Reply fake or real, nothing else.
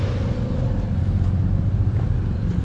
real